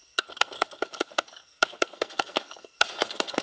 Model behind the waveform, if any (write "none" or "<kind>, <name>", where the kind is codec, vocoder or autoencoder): codec, SNAC